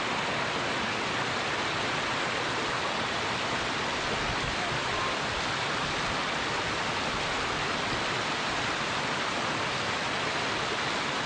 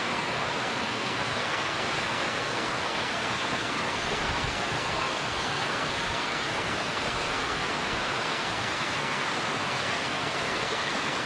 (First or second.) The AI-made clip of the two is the second